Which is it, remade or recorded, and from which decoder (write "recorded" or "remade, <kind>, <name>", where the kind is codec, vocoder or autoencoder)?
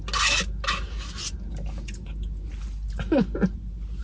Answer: recorded